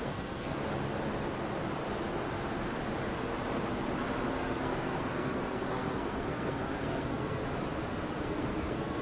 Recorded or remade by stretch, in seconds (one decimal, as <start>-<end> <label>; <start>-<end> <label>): 0.0-0.6 remade; 0.6-4.3 recorded; 4.3-7.4 remade; 7.4-8.2 recorded; 8.2-9.0 remade